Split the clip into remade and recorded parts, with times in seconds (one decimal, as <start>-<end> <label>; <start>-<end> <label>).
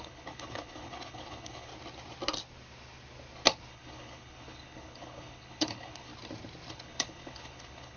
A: 0.0-1.7 remade; 1.7-3.7 recorded; 3.7-6.1 remade; 6.1-6.7 recorded; 6.7-8.0 remade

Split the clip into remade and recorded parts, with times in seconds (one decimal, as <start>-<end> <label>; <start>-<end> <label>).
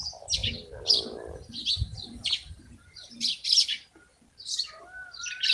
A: 0.0-5.5 recorded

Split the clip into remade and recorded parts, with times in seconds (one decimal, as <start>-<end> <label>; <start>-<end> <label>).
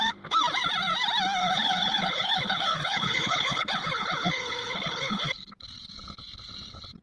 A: 0.0-1.4 recorded; 1.4-5.5 remade; 5.5-7.0 recorded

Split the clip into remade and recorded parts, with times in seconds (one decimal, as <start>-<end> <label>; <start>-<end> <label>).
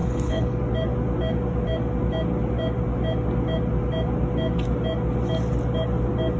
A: 0.0-0.6 remade; 0.6-6.4 recorded